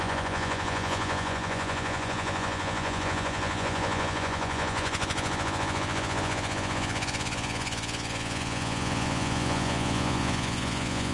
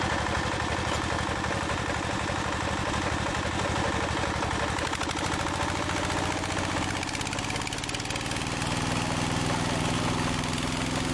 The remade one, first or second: first